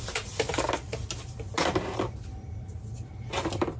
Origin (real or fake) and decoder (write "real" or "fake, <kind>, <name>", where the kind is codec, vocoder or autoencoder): real